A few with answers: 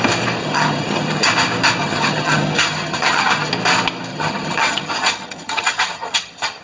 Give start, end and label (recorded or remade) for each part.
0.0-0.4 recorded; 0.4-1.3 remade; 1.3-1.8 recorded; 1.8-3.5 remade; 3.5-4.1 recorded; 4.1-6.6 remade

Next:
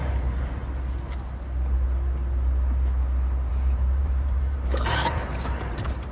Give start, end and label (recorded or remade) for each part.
0.0-0.6 remade; 0.6-3.5 recorded; 3.5-6.1 remade

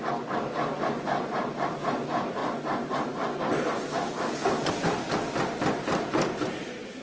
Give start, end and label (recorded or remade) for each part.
0.0-7.0 recorded

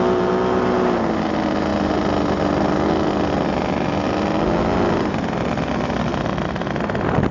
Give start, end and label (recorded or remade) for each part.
0.0-7.3 recorded

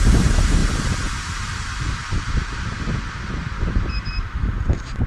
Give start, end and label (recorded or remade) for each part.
0.0-0.6 remade; 0.6-3.7 recorded; 3.7-5.1 remade